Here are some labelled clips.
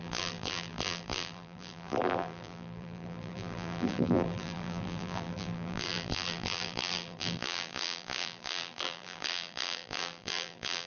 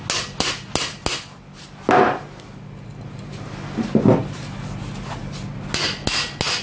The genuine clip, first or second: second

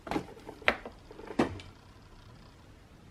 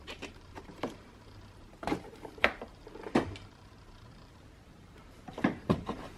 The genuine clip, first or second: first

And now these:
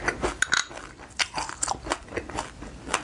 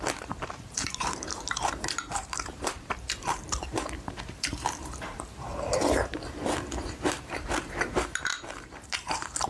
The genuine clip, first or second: first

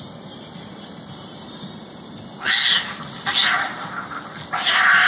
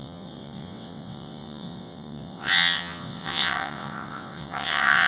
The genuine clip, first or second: first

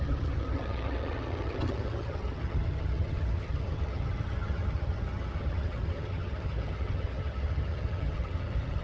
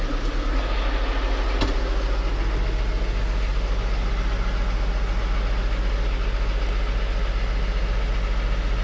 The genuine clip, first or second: second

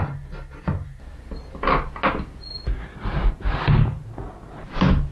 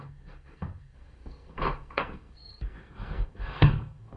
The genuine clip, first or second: first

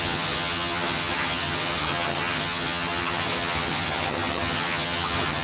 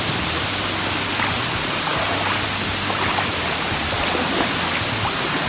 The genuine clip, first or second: second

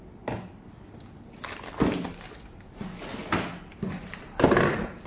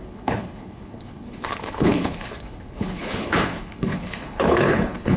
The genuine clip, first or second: first